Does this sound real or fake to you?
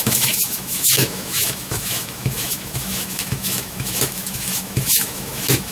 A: fake